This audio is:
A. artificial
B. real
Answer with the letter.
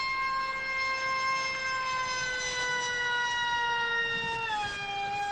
B